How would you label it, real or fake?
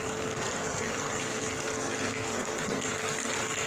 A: fake